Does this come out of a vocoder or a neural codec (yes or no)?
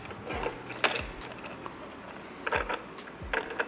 no